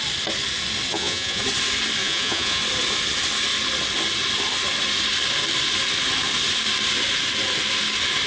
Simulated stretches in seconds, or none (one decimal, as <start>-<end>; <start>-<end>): 0.9-1.4; 2.0-2.6